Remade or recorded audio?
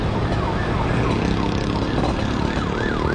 recorded